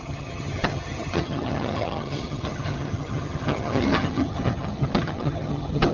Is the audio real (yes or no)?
no